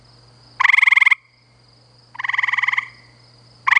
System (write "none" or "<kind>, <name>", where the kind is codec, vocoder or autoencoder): none